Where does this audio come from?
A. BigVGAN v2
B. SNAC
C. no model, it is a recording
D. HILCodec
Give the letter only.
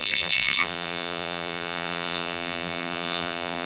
A